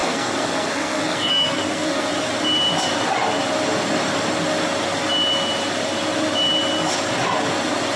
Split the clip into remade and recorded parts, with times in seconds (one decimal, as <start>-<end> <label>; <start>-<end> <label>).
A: 0.0-2.1 remade; 2.1-8.0 recorded